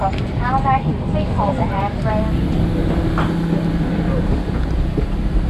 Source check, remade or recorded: recorded